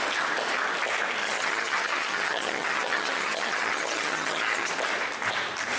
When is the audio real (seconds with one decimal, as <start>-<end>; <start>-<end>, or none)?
0.0-1.2; 4.7-5.8